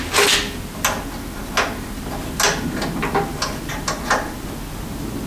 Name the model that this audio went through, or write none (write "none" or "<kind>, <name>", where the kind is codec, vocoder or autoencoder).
none